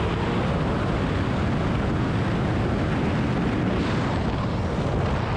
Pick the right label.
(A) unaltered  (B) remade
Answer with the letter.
A